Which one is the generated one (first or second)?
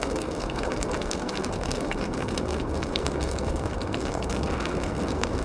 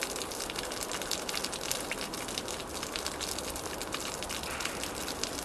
first